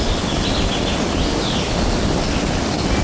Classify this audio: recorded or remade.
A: recorded